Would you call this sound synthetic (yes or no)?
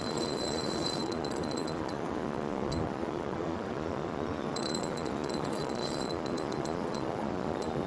yes